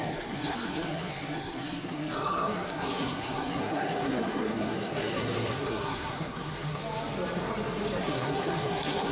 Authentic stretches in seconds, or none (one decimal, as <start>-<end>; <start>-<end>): 6.8-8.0